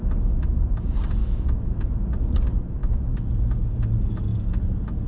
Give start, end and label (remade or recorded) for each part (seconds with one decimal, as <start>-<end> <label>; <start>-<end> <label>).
0.0-1.2 recorded; 1.2-1.8 remade; 1.8-2.8 recorded; 2.8-3.3 remade; 3.3-5.1 recorded